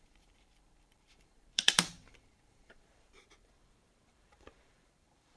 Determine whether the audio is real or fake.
fake